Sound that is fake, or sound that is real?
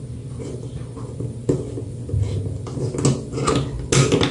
real